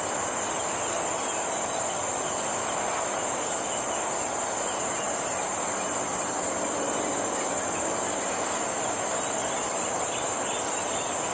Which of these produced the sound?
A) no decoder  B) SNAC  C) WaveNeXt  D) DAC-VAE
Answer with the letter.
A